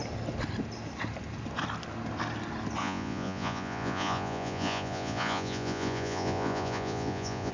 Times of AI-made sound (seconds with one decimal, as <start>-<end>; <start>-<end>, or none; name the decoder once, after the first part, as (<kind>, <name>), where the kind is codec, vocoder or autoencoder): 2.8-7.5 (vocoder, Vocos)